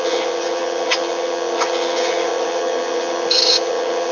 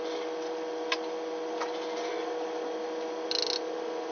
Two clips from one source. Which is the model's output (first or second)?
first